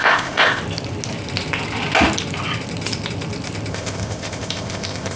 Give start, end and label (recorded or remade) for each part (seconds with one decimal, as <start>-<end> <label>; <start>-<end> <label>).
0.0-0.6 remade; 0.6-3.7 recorded; 3.7-5.2 remade